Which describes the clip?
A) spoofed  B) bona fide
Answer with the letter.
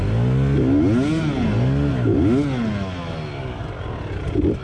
B